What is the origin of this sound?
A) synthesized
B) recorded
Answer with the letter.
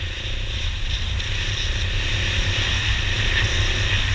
B